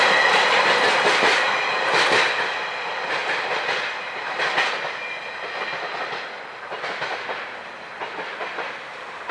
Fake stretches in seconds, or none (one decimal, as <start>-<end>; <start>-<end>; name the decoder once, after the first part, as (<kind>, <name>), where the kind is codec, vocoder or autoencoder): none